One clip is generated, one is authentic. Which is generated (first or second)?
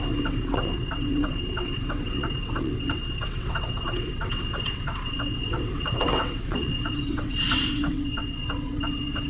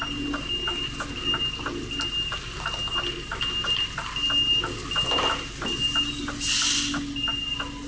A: first